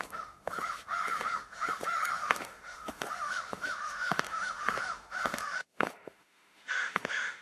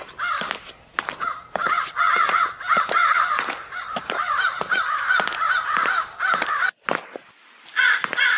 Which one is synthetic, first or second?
first